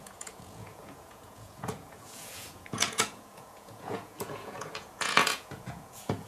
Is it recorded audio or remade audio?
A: remade